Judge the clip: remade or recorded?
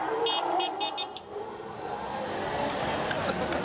recorded